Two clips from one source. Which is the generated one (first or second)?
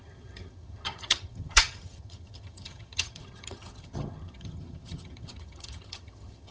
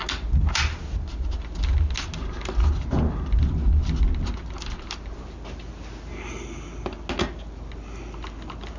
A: first